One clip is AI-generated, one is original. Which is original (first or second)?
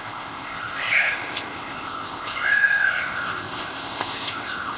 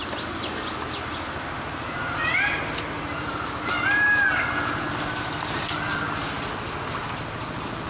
second